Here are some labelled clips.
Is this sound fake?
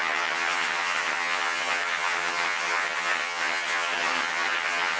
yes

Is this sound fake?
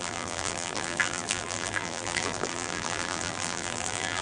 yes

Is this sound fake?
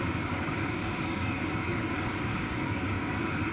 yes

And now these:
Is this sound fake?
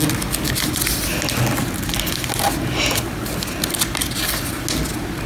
no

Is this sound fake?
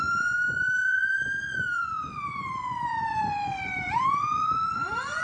yes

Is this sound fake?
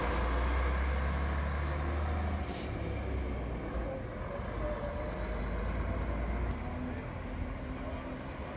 no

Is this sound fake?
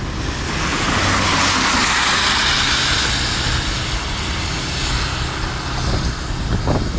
no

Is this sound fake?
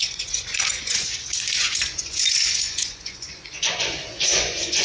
yes